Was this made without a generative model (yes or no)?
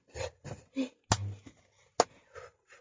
yes